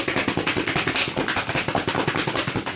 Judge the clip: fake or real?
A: real